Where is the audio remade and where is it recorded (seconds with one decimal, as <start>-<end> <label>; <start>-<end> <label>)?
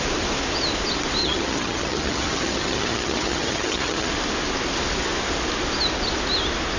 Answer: 0.0-1.2 recorded; 1.2-4.1 remade; 4.1-6.8 recorded